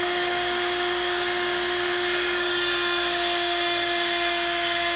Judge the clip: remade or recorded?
remade